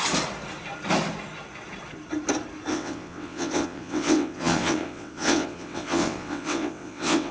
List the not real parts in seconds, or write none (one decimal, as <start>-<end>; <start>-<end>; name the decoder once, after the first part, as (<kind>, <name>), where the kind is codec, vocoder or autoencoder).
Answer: 2.7-7.3 (vocoder, WaveNeXt)